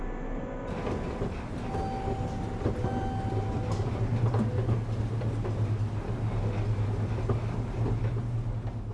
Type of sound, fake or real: real